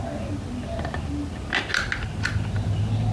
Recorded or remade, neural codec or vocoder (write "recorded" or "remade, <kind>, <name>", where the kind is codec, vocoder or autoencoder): recorded